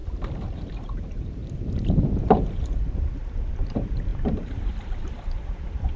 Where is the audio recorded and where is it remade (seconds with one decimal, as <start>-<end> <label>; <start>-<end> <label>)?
0.0-0.7 recorded; 0.7-1.4 remade; 1.4-2.2 recorded; 2.2-6.0 remade